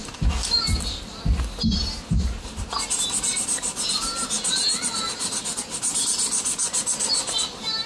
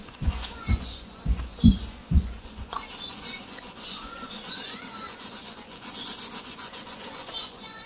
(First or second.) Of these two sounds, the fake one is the second